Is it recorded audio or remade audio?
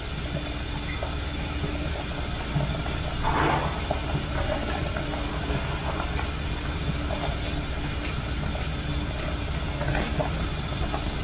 recorded